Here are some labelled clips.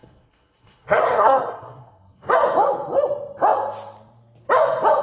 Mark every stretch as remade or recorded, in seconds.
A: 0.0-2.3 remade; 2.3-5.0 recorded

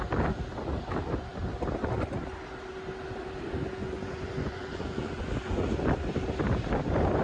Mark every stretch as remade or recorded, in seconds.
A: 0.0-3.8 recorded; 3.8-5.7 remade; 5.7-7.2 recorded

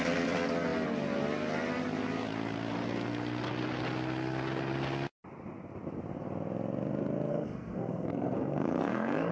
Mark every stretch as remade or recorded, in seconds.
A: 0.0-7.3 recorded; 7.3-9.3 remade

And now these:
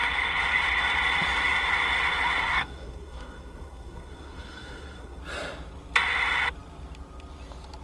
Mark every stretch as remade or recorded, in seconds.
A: 0.0-2.4 recorded; 2.4-5.2 remade; 5.2-7.8 recorded

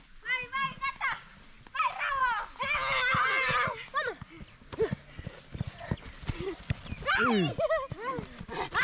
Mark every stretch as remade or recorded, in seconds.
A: 0.0-2.2 recorded; 2.2-3.8 remade; 3.8-8.8 recorded

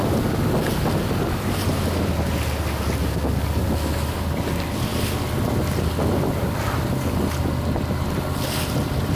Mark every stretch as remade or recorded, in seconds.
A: 0.0-9.1 recorded